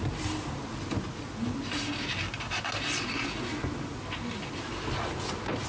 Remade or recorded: recorded